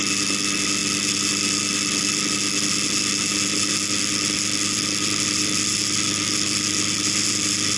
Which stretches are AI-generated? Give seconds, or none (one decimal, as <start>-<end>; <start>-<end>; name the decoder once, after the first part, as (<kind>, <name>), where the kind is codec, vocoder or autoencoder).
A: none